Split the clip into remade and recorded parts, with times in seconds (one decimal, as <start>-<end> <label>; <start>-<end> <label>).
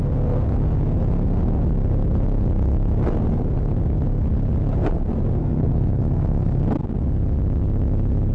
0.0-5.4 recorded; 5.4-6.6 remade; 6.6-8.3 recorded